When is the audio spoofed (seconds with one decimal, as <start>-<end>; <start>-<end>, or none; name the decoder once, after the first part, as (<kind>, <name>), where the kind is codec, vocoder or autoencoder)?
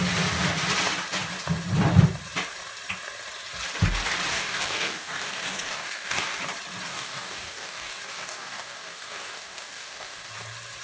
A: 4.3-6.4 (codec, DAC); 6.9-10.3